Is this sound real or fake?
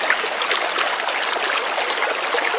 real